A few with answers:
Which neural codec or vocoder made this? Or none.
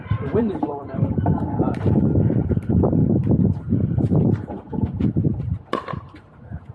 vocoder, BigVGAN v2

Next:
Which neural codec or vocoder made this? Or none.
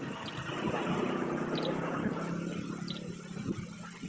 none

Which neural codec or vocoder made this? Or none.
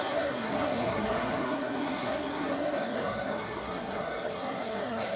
codec, SNAC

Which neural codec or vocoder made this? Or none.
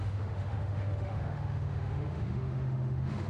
autoencoder, DAC-VAE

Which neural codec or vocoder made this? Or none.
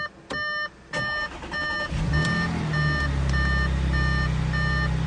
none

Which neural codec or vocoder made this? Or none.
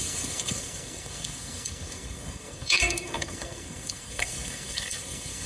codec, SNAC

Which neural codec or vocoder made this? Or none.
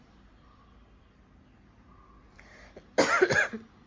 none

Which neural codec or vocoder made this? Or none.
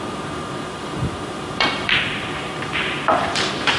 vocoder, BigVGAN v2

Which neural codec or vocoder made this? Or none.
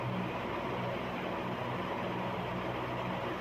none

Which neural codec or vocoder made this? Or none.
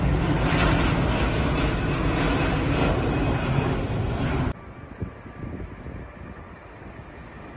none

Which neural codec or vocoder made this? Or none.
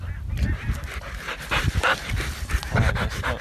none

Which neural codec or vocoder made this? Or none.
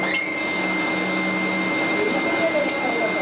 none